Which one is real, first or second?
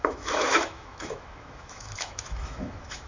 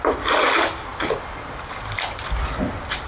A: second